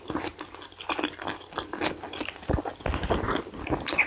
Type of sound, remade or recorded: recorded